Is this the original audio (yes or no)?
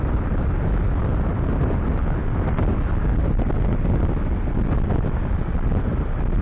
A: yes